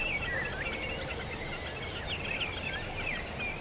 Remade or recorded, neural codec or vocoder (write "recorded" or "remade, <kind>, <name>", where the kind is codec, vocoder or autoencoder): recorded